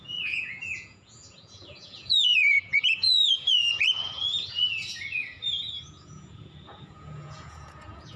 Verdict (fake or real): fake